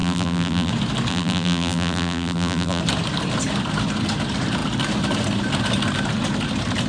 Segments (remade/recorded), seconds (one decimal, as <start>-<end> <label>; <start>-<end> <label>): 0.0-0.7 remade; 0.7-1.1 recorded; 1.1-2.8 remade; 2.8-6.9 recorded